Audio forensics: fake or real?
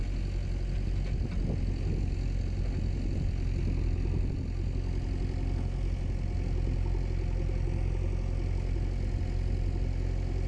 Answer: real